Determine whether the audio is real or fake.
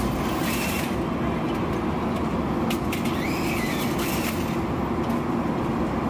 real